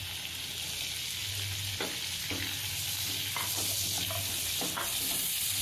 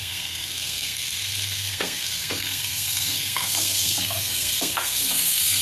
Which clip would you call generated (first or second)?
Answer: second